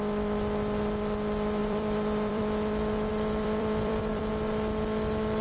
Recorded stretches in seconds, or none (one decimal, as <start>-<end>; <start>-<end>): 0.0-1.6; 2.4-3.1; 4.3-5.4